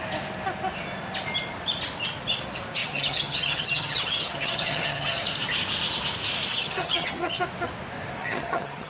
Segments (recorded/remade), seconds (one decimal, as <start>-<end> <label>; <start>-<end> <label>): 0.0-2.8 recorded; 2.8-5.2 remade; 5.2-6.5 recorded; 6.5-7.4 remade; 7.4-8.2 recorded; 8.2-8.9 remade